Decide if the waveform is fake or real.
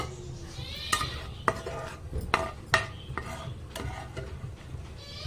real